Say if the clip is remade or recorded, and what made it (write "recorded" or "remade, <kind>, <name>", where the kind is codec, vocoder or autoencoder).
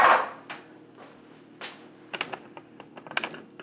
recorded